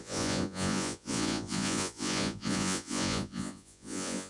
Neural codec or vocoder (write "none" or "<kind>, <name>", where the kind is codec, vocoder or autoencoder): vocoder, Vocos